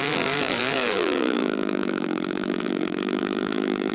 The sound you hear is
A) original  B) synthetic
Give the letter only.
B